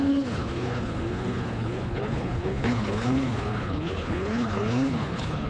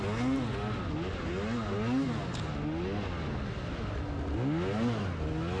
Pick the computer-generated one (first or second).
first